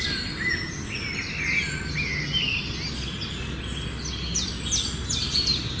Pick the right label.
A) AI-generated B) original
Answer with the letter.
B